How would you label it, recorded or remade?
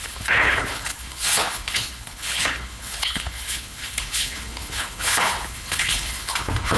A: remade